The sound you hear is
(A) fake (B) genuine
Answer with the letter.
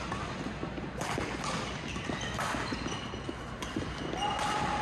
B